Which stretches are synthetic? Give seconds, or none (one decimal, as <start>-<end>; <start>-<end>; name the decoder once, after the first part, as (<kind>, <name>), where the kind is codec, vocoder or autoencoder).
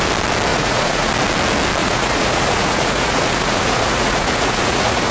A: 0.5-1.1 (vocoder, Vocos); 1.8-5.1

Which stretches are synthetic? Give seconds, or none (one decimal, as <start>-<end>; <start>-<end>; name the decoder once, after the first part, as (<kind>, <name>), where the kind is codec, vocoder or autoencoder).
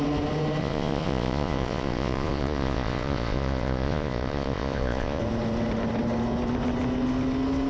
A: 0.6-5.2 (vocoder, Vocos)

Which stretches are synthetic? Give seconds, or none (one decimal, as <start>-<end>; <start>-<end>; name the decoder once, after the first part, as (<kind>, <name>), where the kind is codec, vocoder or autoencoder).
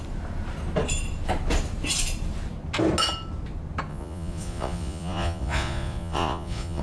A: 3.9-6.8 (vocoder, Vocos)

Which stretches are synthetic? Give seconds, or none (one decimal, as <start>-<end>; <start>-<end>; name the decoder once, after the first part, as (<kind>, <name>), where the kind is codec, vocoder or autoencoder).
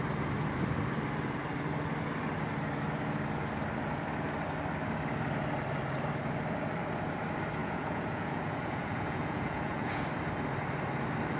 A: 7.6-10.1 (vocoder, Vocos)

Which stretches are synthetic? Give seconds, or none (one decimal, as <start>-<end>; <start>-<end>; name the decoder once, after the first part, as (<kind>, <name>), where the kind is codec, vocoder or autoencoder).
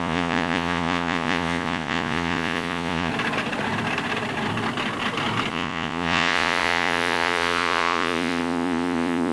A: 0.0-3.1 (vocoder, Vocos); 5.5-9.3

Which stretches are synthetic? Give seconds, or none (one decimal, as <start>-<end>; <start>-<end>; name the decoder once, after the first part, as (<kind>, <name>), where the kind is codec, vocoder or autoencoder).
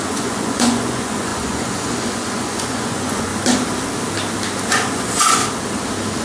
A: 0.0-3.3 (vocoder, Vocos); 4.7-5.4